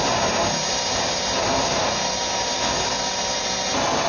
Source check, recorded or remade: recorded